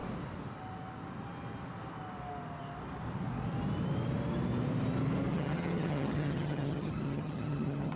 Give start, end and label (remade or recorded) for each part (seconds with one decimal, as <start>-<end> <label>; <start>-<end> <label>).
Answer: 0.0-5.3 recorded; 5.3-8.0 remade